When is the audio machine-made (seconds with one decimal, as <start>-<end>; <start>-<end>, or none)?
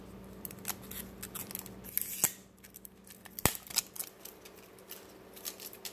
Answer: none